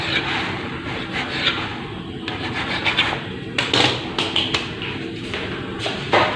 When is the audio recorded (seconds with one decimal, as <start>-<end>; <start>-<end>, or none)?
0.0-6.4